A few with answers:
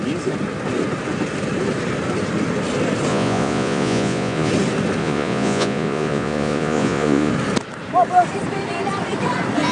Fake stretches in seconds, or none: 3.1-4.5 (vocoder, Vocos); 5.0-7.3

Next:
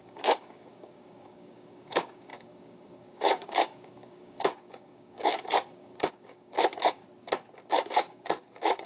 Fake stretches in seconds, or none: 0.0-7.0 (codec, DAC); 7.7-8.9